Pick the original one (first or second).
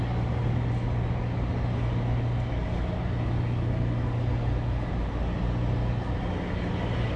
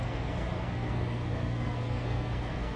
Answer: first